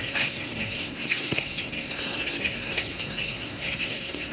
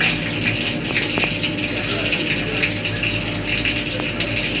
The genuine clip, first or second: second